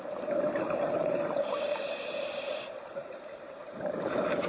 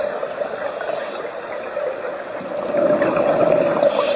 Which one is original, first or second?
second